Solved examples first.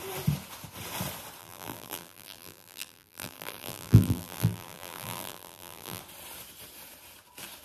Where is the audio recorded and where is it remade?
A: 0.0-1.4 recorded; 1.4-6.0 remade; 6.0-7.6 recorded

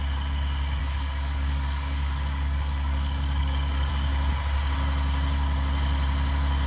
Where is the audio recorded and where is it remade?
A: 0.0-0.8 recorded; 0.8-3.9 remade; 3.9-6.7 recorded

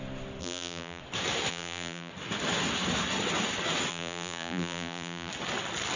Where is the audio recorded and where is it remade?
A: 0.0-0.4 recorded; 0.4-1.0 remade; 1.0-1.5 recorded; 1.5-2.1 remade; 2.1-3.9 recorded; 3.9-5.3 remade; 5.3-6.0 recorded